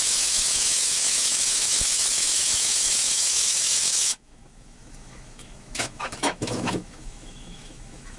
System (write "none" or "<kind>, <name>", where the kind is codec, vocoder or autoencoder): autoencoder, DAC-VAE